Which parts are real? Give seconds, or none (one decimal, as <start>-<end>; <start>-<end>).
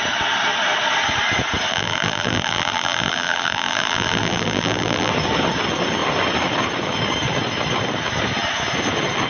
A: 0.0-1.7; 5.1-9.3